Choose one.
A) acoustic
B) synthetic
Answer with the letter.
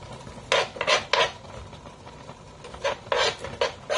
A